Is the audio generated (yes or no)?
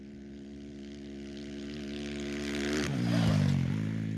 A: no